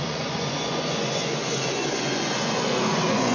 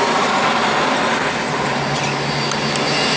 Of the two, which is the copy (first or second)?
first